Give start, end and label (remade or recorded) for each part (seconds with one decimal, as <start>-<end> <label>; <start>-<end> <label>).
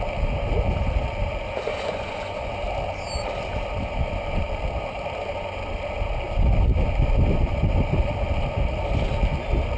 0.0-1.7 recorded; 1.7-2.5 remade; 2.5-9.8 recorded